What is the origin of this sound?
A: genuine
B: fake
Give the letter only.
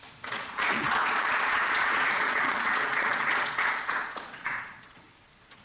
B